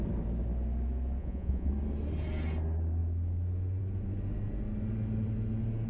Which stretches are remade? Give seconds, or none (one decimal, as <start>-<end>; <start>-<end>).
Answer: 1.2-1.7